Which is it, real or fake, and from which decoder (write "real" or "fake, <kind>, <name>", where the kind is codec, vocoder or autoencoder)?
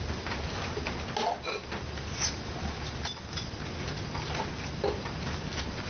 real